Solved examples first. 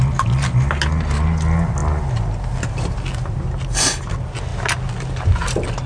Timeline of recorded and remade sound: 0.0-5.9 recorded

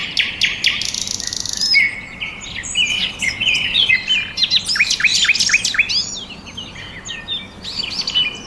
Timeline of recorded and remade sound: 0.0-2.9 recorded; 2.9-3.9 remade; 3.9-8.5 recorded

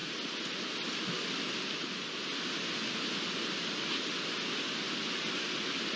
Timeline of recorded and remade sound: 0.0-6.0 recorded

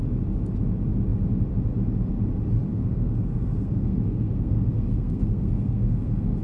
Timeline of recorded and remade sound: 0.0-2.7 recorded; 2.7-6.4 remade

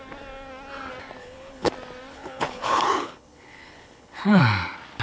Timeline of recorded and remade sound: 0.0-1.2 recorded; 1.2-1.7 remade; 1.7-2.1 recorded; 2.1-4.4 remade; 4.4-5.0 recorded

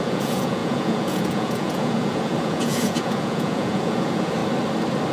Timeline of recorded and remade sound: 0.0-4.4 remade; 4.4-5.1 recorded

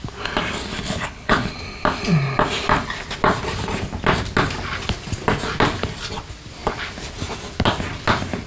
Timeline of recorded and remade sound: 0.0-0.7 recorded; 0.7-1.5 remade; 1.5-8.5 recorded